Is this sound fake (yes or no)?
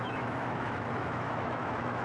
yes